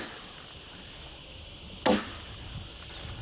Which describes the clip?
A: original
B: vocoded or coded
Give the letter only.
A